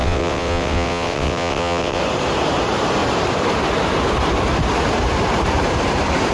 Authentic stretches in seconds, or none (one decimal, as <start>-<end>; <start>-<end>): 2.0-6.3